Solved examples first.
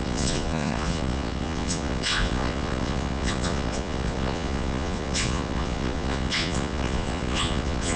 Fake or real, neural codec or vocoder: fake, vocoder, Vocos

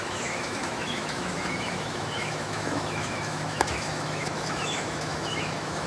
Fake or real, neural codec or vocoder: fake, autoencoder, DAC-VAE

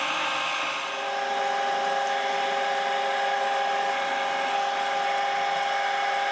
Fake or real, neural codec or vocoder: real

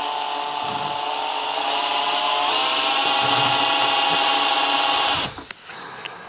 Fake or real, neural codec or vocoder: real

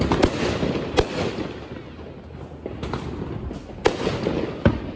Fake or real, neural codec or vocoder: real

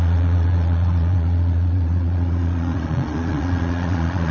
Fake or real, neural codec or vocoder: fake, vocoder, Vocos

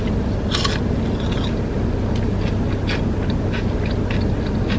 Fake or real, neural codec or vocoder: real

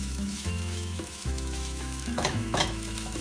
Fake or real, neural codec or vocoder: fake, autoencoder, DAC-VAE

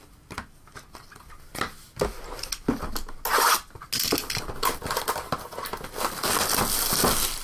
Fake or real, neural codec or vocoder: real